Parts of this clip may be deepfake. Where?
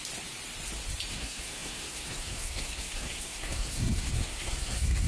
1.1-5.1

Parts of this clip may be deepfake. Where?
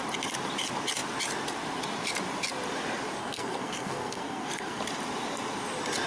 3.2-4.8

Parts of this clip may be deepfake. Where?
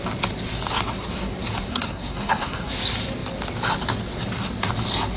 1.7-2.7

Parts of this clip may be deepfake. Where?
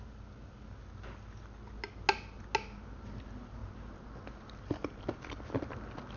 none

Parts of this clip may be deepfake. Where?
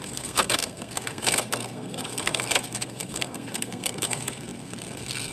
0.0-5.3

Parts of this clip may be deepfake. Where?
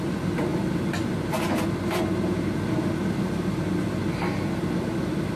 none